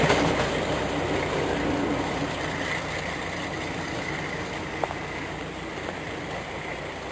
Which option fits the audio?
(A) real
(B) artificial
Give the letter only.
A